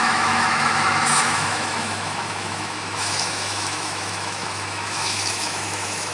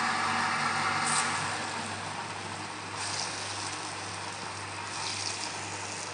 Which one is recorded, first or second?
second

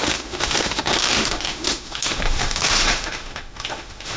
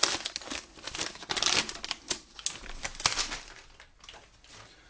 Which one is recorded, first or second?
second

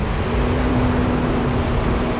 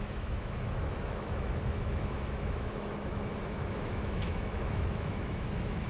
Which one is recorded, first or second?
first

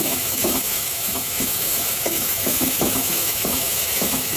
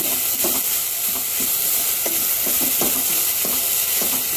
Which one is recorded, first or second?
second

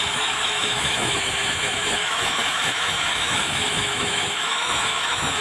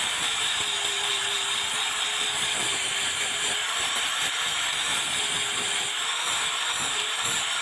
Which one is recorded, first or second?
second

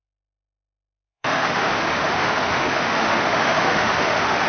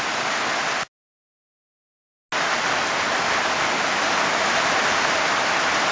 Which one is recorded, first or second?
second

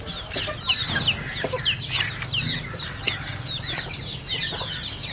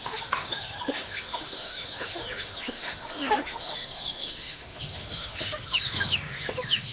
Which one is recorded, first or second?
first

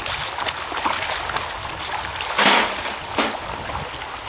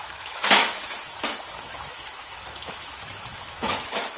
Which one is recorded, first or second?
first